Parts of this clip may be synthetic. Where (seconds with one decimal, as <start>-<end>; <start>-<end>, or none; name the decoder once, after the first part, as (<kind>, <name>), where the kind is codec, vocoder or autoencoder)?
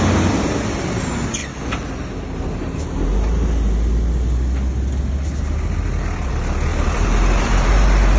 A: 6.7-8.2 (vocoder, BigVGAN v2)